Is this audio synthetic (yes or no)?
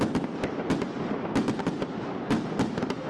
no